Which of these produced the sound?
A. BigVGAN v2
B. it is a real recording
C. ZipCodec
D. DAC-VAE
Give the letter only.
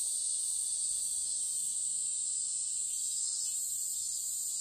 B